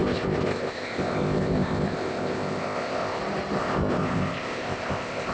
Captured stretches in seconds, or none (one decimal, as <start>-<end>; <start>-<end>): 3.2-3.6